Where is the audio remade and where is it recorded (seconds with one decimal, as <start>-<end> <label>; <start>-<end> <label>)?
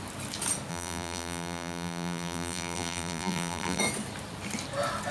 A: 0.0-0.7 recorded; 0.7-3.8 remade; 3.8-5.1 recorded